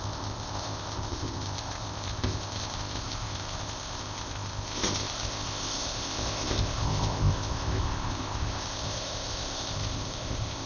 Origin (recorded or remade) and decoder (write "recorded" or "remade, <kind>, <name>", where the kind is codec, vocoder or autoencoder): remade, codec, ZipCodec